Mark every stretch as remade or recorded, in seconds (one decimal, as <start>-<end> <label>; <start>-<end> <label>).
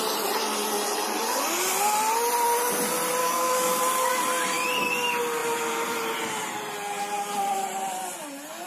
0.0-3.2 recorded; 3.2-3.8 remade; 3.8-8.7 recorded